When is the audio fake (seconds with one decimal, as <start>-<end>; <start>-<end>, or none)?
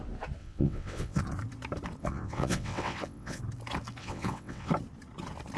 0.4-1.2; 2.0-3.4; 4.0-4.7